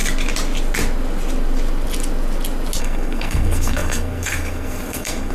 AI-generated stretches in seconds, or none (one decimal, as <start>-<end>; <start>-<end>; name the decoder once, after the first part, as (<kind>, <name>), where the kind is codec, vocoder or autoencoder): 2.8-5.3 (codec, SNAC)